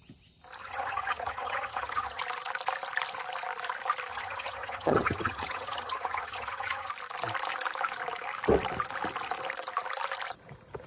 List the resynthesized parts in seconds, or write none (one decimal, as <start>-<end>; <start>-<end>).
0.6-2.2; 4.1-6.9